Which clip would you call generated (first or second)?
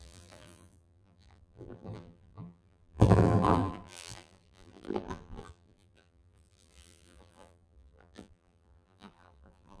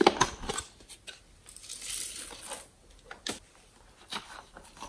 first